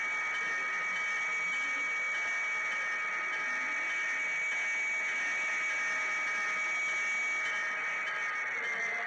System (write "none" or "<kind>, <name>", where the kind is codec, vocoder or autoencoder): none